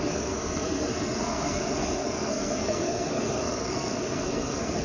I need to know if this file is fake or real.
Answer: fake